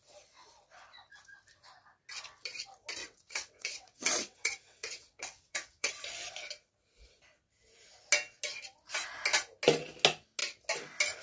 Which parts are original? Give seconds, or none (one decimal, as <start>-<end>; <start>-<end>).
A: 0.0-3.0; 5.9-11.2